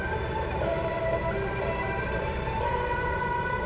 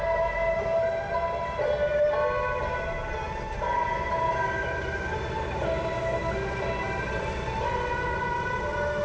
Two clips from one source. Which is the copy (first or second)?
first